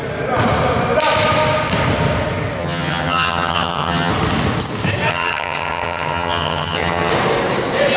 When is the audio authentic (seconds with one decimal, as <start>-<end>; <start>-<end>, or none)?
0.0-2.6; 4.1-5.1; 7.1-8.0